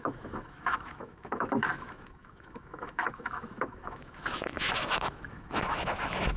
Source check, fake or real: fake